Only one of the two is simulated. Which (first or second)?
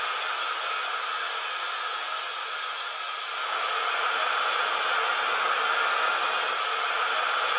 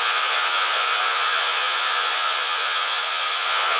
second